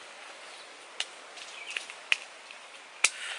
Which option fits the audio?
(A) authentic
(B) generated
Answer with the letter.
A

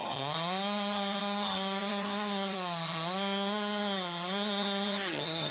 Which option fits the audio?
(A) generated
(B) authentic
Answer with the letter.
A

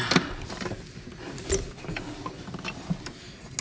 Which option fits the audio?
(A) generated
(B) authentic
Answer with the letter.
B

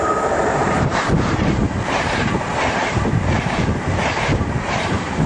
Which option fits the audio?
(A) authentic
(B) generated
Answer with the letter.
B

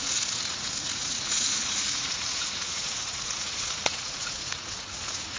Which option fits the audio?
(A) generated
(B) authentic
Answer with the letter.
A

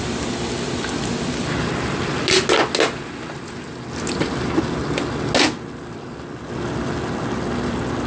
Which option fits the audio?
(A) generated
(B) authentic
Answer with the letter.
B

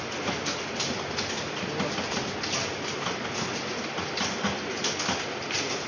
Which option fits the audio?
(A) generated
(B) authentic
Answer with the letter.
B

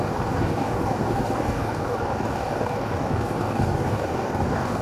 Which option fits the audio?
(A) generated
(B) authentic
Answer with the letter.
A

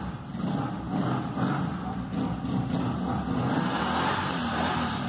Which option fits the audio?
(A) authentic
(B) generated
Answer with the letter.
A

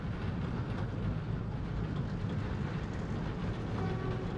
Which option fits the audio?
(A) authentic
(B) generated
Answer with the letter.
A